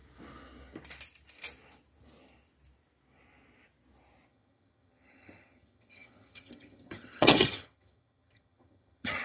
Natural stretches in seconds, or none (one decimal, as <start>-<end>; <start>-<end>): 0.0-4.3